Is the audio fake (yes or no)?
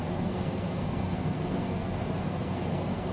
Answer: yes